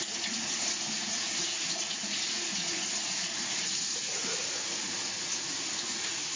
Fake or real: fake